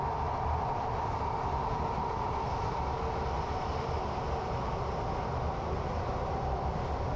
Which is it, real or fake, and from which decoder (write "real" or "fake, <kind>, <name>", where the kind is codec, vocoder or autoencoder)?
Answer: real